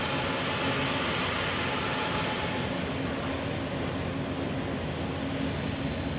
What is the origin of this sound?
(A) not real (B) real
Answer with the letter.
B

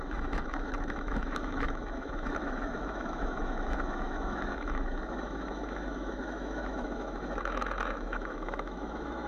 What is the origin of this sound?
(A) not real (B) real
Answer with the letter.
A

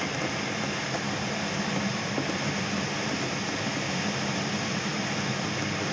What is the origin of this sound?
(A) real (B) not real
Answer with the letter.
A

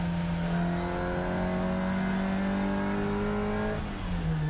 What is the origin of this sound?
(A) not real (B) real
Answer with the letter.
B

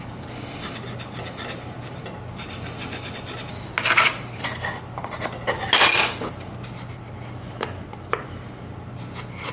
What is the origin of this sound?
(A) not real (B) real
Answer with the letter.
B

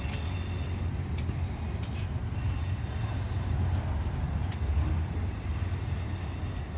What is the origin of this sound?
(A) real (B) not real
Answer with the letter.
A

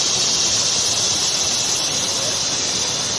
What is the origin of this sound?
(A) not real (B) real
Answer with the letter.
B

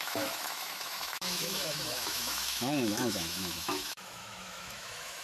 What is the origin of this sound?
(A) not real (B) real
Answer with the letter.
A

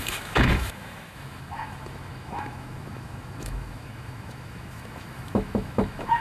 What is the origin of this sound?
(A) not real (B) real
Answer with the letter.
A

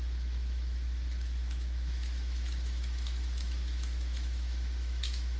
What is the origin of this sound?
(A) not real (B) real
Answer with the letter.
A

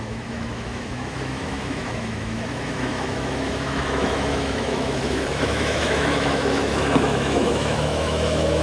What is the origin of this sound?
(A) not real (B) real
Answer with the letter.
A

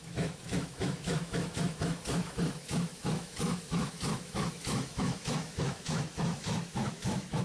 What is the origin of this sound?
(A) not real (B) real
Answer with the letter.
A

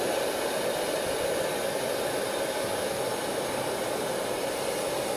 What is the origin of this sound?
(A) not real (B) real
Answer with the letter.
B